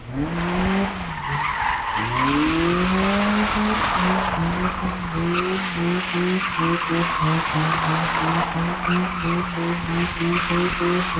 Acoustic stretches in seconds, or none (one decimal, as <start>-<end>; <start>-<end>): 0.0-11.2